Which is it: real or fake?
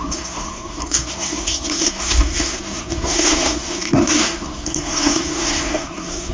fake